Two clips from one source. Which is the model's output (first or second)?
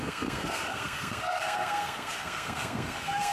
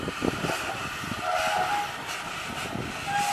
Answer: first